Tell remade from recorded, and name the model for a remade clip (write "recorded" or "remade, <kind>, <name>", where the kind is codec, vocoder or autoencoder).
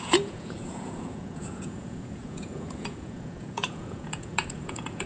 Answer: remade, vocoder, Vocos